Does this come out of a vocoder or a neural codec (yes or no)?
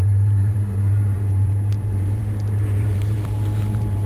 yes